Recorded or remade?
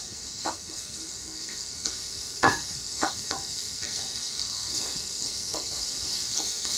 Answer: remade